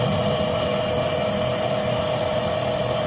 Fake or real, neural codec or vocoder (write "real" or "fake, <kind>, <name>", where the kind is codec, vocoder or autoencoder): real